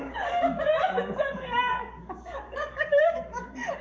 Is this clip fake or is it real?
fake